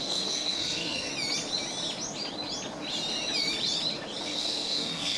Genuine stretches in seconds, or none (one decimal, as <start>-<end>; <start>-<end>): 1.1-4.2